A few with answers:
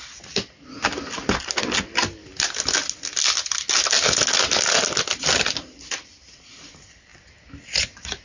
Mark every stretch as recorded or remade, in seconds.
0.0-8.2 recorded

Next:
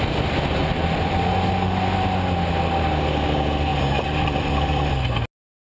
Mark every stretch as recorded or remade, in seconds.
0.0-0.6 recorded; 0.6-1.3 remade; 1.3-3.7 recorded; 3.7-4.9 remade; 4.9-5.6 recorded

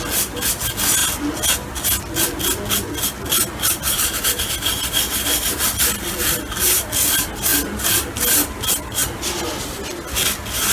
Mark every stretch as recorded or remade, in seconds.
0.0-10.7 recorded